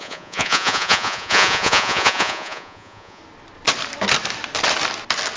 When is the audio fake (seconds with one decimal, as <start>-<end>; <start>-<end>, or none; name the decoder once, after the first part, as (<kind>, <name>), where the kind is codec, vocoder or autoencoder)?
0.0-3.2 (vocoder, Vocos)